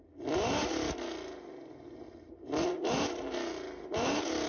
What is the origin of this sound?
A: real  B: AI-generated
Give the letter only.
A